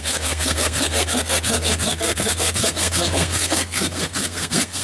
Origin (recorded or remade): remade